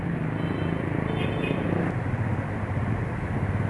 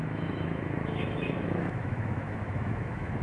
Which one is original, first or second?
first